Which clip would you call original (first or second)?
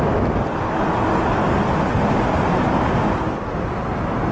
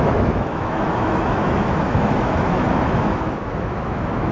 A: first